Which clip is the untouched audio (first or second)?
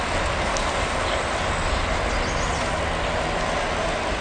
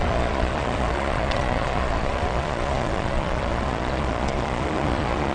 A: first